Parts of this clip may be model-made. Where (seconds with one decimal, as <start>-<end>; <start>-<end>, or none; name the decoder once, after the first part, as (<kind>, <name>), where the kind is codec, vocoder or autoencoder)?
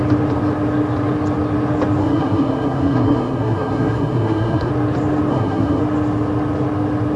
2.0-4.7 (codec, SNAC); 5.3-5.8